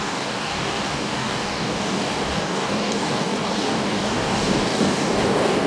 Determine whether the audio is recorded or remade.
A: remade